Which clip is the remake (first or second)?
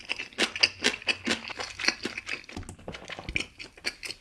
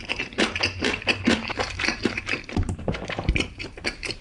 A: second